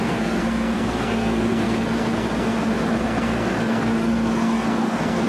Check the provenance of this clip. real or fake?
fake